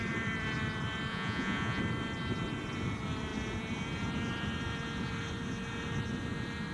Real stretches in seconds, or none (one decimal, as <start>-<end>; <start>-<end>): 0.0-1.1; 1.8-6.7